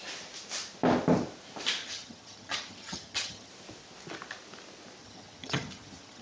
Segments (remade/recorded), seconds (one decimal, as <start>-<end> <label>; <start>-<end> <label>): 0.0-1.8 recorded; 1.8-3.5 remade; 3.5-5.0 recorded; 5.0-6.2 remade